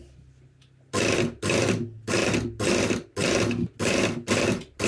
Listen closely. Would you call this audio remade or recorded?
recorded